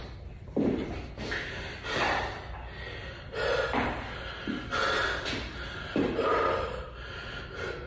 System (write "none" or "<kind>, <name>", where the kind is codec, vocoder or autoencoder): none